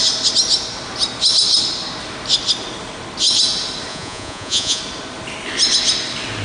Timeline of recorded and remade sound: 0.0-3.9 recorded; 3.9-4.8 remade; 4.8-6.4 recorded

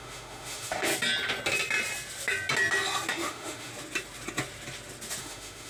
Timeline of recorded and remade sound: 0.0-0.9 remade; 0.9-3.1 recorded; 3.1-3.7 remade; 3.7-5.2 recorded; 5.2-5.7 remade

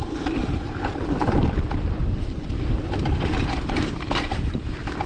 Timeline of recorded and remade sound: 0.0-5.1 remade